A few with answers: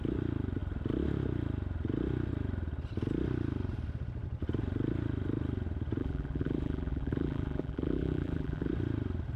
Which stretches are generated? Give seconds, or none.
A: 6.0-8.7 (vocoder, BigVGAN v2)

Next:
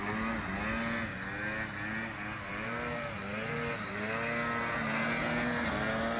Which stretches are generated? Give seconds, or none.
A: 2.5-4.0 (vocoder, BigVGAN v2)